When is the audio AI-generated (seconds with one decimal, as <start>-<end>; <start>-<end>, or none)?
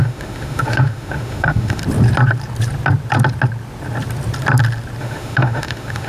0.0-1.8; 5.0-6.1